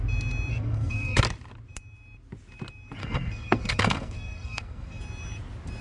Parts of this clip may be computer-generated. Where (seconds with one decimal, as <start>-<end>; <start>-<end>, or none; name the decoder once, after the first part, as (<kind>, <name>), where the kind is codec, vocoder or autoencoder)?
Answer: 0.5-1.2 (codec, SNAC); 3.0-5.0